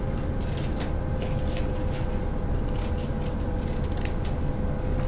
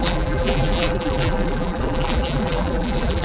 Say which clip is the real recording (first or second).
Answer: first